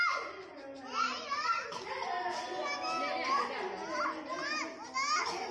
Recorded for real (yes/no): yes